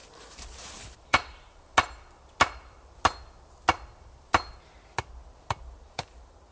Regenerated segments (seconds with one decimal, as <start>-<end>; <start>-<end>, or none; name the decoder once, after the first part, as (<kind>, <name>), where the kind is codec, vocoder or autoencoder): 0.0-1.7 (vocoder, BigVGAN v2); 5.6-6.5